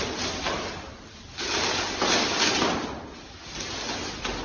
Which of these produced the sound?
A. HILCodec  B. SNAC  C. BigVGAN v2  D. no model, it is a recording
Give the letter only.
D